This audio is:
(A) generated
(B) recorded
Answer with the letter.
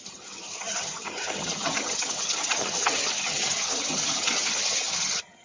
A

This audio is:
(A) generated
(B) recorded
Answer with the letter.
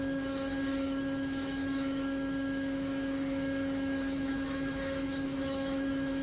A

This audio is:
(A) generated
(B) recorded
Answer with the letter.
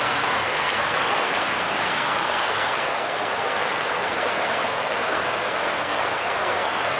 A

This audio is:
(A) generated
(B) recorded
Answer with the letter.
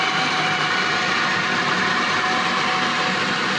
B